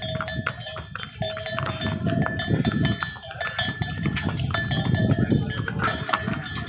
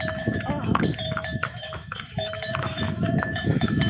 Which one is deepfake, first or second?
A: second